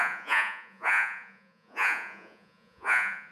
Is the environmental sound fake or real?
fake